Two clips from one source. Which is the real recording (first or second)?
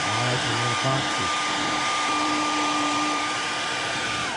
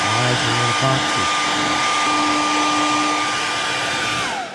second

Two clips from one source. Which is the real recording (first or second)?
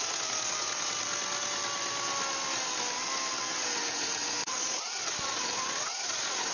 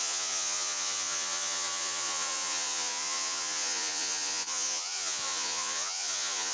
first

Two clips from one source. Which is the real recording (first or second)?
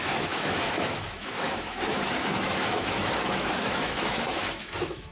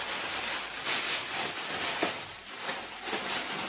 second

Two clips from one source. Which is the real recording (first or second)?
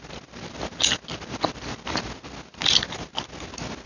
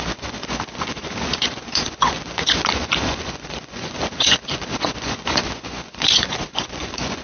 first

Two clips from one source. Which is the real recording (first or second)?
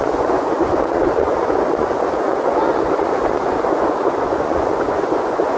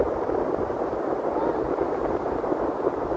second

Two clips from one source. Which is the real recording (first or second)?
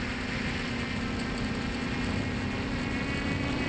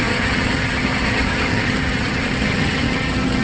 first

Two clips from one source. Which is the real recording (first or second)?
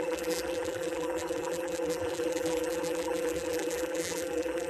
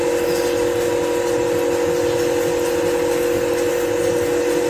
second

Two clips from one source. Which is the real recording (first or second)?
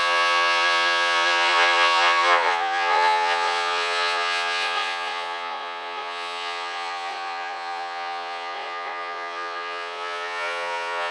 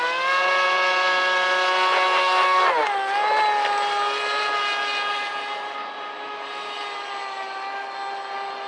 second